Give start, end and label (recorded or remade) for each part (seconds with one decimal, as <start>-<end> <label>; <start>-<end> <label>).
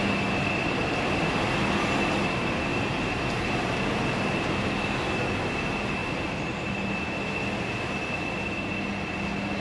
0.0-2.7 recorded; 2.7-4.7 remade; 4.7-6.0 recorded; 6.0-7.1 remade; 7.1-9.6 recorded